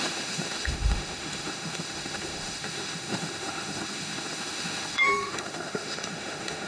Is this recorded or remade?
remade